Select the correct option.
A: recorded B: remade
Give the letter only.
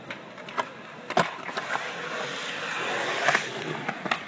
A